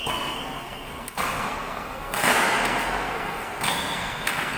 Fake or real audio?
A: fake